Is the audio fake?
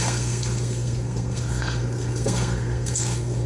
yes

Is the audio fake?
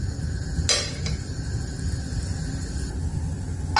no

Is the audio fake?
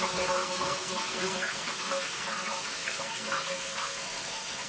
yes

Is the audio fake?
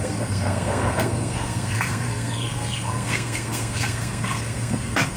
yes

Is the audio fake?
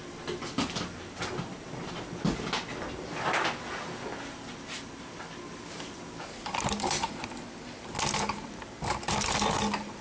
no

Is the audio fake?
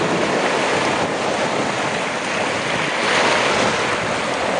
no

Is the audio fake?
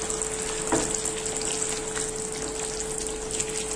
no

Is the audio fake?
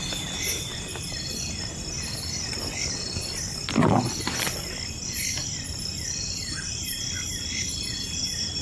no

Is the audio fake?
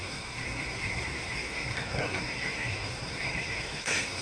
yes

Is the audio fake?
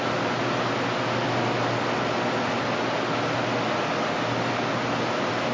no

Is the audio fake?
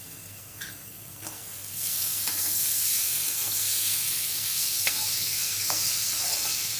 yes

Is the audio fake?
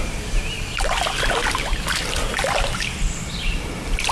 no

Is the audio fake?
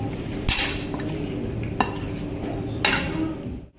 no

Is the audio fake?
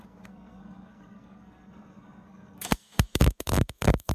yes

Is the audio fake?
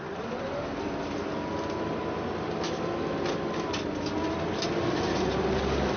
no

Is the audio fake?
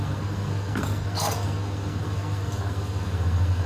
yes